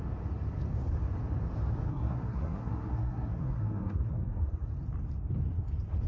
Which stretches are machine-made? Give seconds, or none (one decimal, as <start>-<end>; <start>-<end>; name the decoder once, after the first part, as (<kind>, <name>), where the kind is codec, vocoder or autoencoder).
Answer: 1.9-4.7 (codec, SNAC)